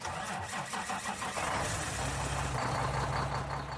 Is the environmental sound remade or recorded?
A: recorded